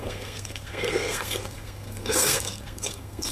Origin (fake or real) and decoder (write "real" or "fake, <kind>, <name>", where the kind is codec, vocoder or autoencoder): fake, codec, SNAC